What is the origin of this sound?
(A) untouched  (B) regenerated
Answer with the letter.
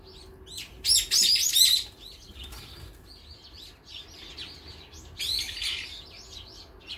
A